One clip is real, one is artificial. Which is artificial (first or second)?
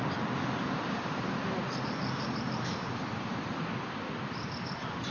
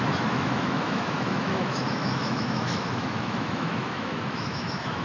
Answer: second